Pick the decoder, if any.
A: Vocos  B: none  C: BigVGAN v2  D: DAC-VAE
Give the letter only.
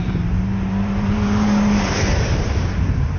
C